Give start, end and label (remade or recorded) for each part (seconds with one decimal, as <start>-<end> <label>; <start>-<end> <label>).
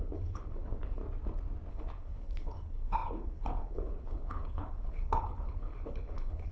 0.0-1.0 remade; 1.0-1.7 recorded; 1.7-6.5 remade